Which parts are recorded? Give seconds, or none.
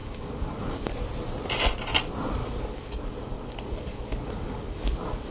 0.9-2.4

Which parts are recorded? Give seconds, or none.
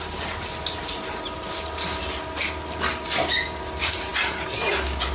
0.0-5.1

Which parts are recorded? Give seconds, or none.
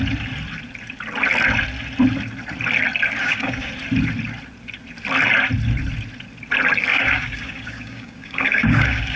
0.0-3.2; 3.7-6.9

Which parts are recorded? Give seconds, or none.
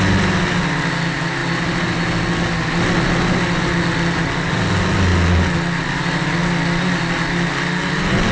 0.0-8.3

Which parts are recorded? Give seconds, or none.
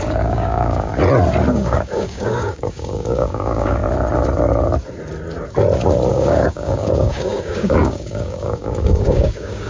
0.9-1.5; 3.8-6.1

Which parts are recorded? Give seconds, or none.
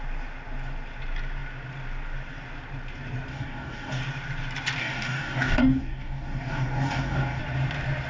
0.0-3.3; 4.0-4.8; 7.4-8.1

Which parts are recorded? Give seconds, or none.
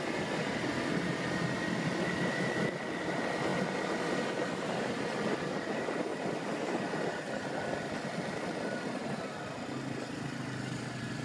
0.0-11.2